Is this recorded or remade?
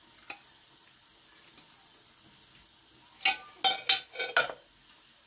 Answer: recorded